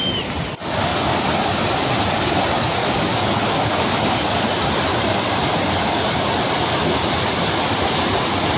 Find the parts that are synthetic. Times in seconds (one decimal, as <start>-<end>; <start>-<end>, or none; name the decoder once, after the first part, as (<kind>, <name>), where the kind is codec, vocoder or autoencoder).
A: 2.8-4.0 (codec, DAC)